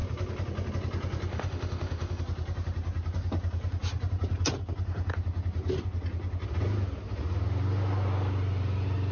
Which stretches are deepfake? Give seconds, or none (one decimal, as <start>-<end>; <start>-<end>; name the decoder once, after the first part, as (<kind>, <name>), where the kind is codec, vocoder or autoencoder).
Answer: 1.3-2.2 (autoencoder, DAC-VAE)